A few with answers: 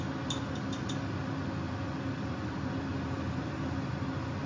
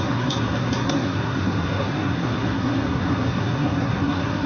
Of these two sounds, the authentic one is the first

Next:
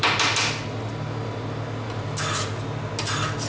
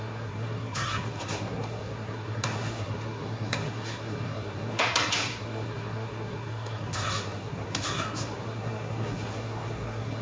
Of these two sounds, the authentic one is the first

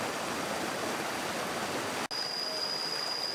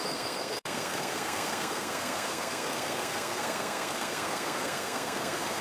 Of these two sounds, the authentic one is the first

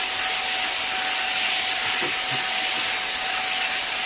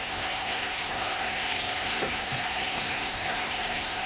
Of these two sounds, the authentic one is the first